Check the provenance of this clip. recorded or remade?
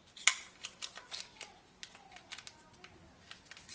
recorded